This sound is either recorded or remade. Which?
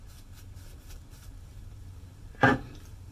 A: remade